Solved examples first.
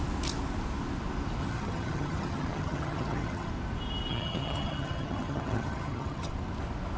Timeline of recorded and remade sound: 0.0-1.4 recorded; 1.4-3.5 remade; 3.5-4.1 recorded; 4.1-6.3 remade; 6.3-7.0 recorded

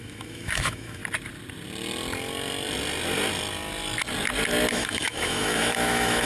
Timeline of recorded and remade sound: 0.0-1.0 remade; 1.0-4.7 recorded; 4.7-6.2 remade

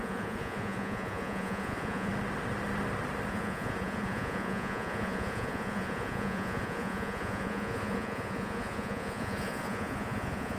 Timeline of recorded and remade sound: 0.0-2.1 remade; 2.1-3.3 recorded; 3.3-10.6 remade

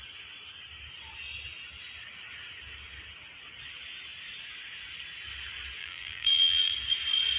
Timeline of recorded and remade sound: 0.0-5.8 recorded; 5.8-6.7 remade; 6.7-7.4 recorded

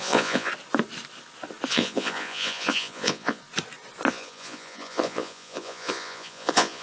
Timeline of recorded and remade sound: 0.0-0.5 remade; 0.5-1.7 recorded; 1.7-3.4 remade; 3.4-4.1 recorded; 4.1-6.8 remade